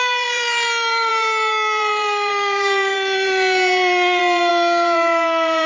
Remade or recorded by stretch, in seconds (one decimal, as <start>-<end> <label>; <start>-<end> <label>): 0.0-5.7 remade